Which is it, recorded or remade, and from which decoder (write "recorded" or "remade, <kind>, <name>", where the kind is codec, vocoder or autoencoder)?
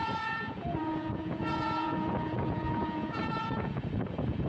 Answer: remade, vocoder, Vocos